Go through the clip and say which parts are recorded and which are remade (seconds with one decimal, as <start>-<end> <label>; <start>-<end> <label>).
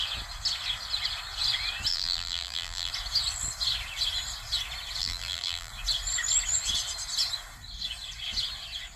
0.0-1.9 recorded; 1.9-2.9 remade; 2.9-5.0 recorded; 5.0-5.7 remade; 5.7-9.0 recorded